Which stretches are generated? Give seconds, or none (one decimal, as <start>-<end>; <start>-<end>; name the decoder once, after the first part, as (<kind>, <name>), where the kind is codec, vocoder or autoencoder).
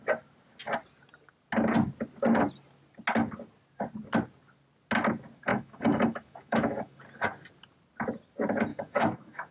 5.5-7.0 (autoencoder, DAC-VAE); 8.7-9.5